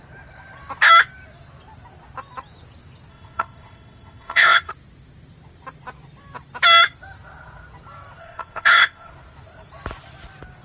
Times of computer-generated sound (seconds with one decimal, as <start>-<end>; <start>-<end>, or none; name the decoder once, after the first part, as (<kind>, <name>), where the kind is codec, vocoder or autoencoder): 3.1-4.7 (codec, ZipCodec); 8.2-9.1